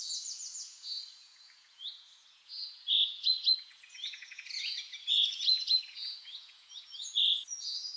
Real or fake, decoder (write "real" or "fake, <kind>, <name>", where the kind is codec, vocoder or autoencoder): fake, vocoder, Vocos